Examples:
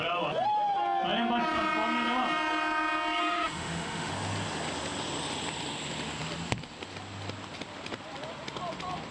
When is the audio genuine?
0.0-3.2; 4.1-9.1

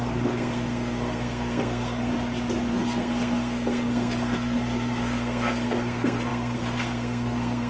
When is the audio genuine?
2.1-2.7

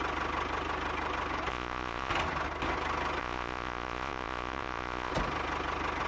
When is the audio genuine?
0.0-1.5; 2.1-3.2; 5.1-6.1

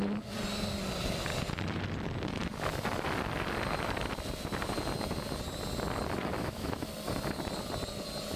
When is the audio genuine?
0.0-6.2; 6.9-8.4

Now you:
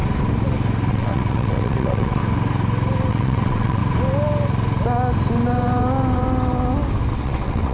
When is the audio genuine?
0.0-0.9; 2.2-3.1; 3.8-7.1

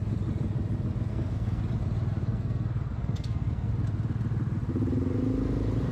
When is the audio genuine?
0.0-1.1; 1.6-2.3; 3.7-5.9